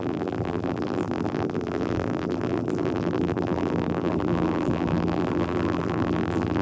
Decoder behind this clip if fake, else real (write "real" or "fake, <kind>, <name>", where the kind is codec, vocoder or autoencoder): fake, vocoder, BigVGAN v2